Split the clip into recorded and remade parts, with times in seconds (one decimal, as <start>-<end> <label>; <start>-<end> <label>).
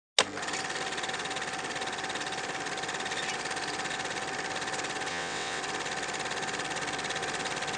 0.0-5.1 recorded; 5.1-5.6 remade; 5.6-7.8 recorded